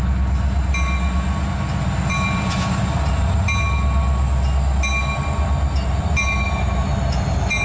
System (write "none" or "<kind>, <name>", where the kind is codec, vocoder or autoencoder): none